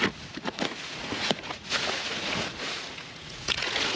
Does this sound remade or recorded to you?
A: remade